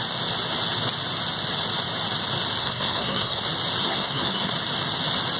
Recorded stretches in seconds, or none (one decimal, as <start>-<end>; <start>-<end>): 0.0-2.6; 3.4-3.8; 4.5-5.4